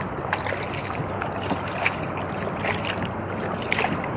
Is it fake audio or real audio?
real